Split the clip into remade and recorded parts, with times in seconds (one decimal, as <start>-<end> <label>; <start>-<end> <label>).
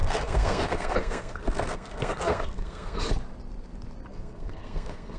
0.0-3.1 remade; 3.1-4.1 recorded; 4.1-5.2 remade